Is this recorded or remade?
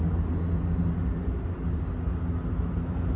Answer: recorded